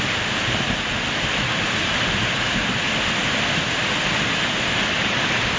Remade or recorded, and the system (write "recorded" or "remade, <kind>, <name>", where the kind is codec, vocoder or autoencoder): recorded